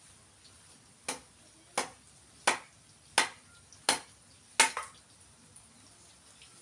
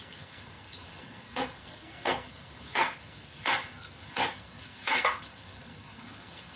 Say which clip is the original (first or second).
first